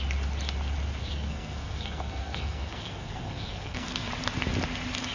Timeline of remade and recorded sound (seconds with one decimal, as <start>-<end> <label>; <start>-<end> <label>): 0.0-1.0 recorded; 1.0-4.1 remade; 4.1-5.1 recorded